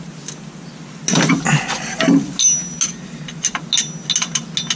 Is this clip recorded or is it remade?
recorded